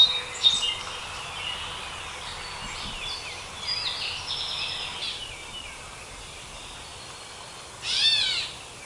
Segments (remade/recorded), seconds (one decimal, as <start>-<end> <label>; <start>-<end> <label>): 0.0-8.9 recorded